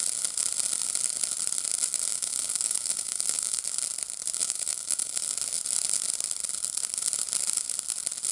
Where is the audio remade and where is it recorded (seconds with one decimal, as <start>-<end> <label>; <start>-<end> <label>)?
0.0-2.1 recorded; 2.1-3.6 remade; 3.6-4.4 recorded; 4.4-5.2 remade; 5.2-8.3 recorded